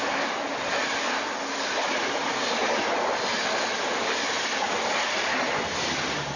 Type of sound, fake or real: real